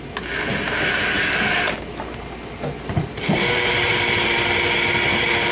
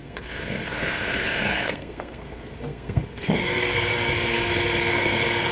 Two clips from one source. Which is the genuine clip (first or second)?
first